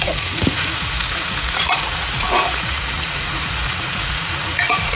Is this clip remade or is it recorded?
remade